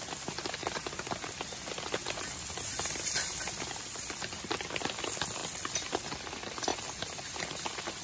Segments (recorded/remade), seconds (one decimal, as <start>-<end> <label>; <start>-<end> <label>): 0.0-8.0 recorded